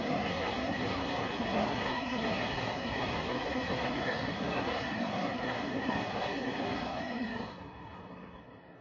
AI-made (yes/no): yes